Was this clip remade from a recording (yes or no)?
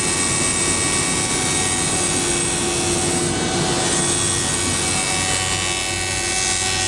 no